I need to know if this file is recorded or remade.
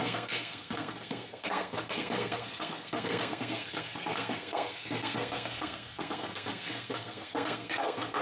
remade